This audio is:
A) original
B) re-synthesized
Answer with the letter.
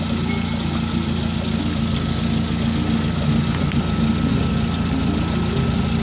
A